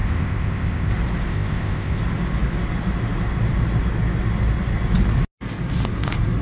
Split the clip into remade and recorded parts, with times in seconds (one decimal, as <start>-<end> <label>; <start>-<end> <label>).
0.0-0.9 remade; 0.9-1.3 recorded; 1.3-2.0 remade; 2.0-6.4 recorded

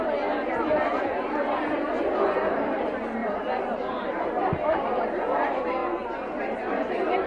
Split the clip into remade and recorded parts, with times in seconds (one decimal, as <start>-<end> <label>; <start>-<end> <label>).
0.0-0.9 recorded; 0.9-2.0 remade; 2.0-3.2 recorded; 3.2-4.4 remade; 4.4-7.3 recorded

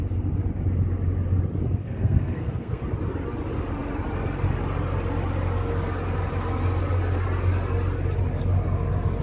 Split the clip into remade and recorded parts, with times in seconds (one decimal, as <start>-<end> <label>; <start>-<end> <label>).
0.0-1.8 recorded; 1.8-2.8 remade; 2.8-9.2 recorded

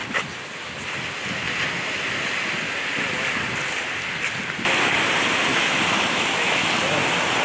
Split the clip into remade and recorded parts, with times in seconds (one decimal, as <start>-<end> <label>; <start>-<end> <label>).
0.0-5.5 recorded; 5.5-6.7 remade; 6.7-7.4 recorded

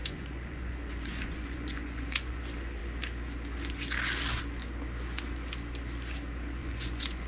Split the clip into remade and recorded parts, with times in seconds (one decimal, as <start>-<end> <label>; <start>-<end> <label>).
0.0-2.4 remade; 2.4-6.6 recorded; 6.6-7.3 remade

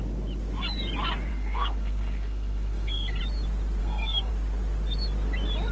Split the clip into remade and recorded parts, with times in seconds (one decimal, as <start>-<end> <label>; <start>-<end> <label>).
0.0-1.3 recorded; 1.3-3.2 remade; 3.2-3.8 recorded; 3.8-4.3 remade; 4.3-5.7 recorded